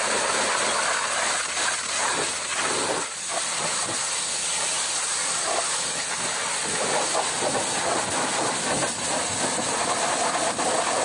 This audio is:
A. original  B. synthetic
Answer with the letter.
A